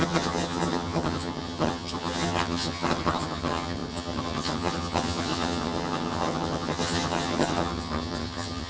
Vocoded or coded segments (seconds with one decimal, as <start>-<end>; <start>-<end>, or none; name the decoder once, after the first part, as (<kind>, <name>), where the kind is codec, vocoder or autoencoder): 0.0-8.7 (vocoder, HiFi-GAN)